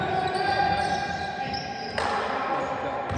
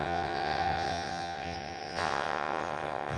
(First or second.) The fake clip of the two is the second